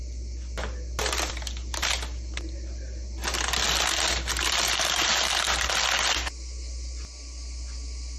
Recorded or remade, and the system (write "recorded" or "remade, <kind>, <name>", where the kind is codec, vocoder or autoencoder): recorded